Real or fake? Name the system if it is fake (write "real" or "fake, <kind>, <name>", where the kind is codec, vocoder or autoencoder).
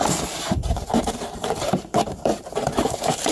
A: fake, vocoder, BigVGAN v2